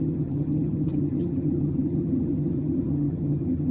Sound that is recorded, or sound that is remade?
remade